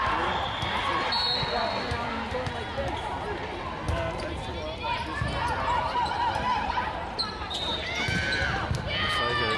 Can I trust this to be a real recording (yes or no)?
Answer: yes